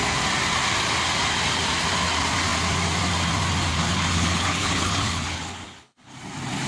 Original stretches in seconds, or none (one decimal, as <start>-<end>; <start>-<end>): 0.0-3.7; 6.1-6.7